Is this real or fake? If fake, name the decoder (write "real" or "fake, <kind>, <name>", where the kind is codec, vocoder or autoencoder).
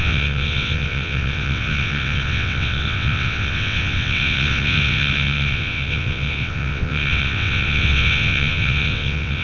fake, vocoder, WaveNeXt